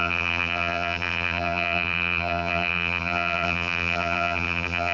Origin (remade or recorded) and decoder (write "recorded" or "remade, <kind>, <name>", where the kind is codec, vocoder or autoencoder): remade, vocoder, BigVGAN v2